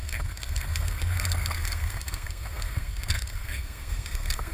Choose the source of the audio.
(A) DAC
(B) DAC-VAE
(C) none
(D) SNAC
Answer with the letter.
D